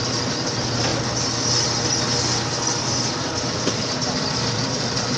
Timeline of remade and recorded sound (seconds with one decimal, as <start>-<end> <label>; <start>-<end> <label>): 0.0-0.9 remade; 0.9-3.4 recorded; 3.4-5.2 remade